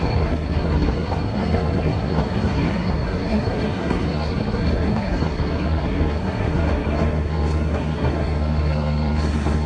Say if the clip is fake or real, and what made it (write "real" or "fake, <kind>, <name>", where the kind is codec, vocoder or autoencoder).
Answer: fake, codec, SNAC